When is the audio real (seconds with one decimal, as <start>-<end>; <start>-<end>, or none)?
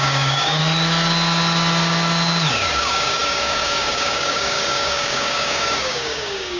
0.6-2.5